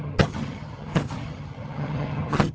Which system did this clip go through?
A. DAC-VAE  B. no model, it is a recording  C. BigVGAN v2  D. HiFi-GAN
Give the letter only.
D